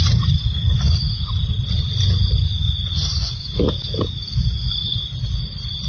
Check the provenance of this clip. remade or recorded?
recorded